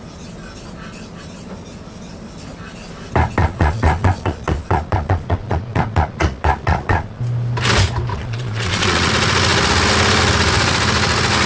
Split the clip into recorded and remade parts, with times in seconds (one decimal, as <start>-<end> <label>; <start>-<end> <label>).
0.0-3.4 recorded; 3.4-7.2 remade; 7.2-8.1 recorded; 8.1-9.1 remade; 9.1-11.5 recorded